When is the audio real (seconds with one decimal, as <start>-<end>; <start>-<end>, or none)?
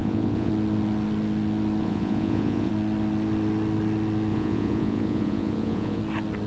0.5-1.8; 2.7-4.3; 6.0-6.5